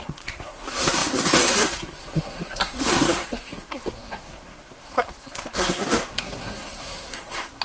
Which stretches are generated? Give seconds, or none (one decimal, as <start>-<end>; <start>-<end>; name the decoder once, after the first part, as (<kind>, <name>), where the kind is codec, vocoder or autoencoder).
0.0-7.6 (codec, SNAC)